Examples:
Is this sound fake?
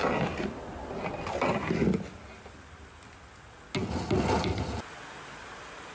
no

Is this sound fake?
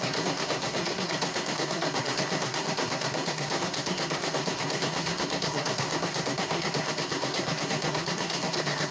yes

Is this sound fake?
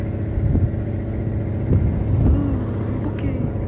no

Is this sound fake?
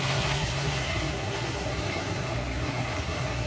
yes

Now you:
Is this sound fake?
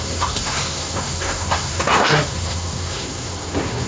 yes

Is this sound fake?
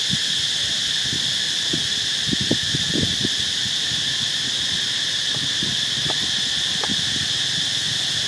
no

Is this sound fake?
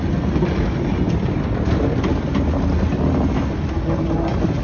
no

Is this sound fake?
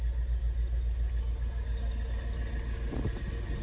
no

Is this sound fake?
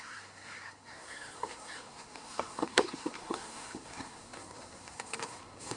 yes